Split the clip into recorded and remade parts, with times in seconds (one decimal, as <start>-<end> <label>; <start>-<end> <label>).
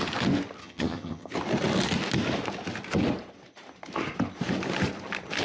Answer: 0.0-0.6 recorded; 0.6-1.3 remade; 1.3-5.4 recorded